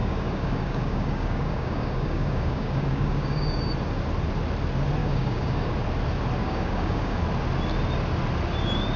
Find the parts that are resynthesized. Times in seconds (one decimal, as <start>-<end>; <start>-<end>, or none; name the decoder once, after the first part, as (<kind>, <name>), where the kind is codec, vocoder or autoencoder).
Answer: 0.0-3.6 (codec, DAC); 5.0-5.7; 6.4-7.2